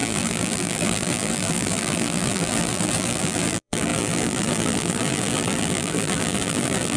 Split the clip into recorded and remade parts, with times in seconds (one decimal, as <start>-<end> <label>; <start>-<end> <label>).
0.0-7.0 remade